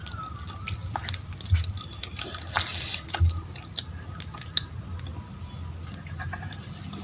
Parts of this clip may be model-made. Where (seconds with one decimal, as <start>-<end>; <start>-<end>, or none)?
none